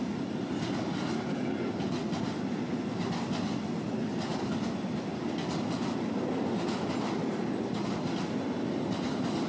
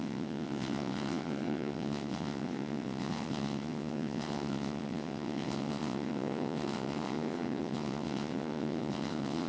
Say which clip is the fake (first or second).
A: second